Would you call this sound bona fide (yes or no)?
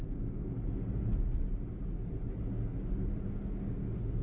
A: yes